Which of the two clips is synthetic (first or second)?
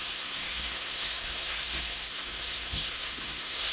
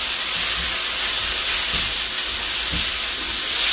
first